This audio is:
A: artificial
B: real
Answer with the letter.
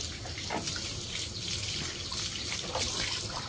B